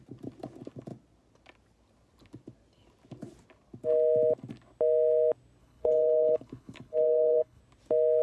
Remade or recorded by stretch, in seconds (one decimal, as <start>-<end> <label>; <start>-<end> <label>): 0.0-5.6 recorded; 5.6-7.6 remade; 7.6-8.2 recorded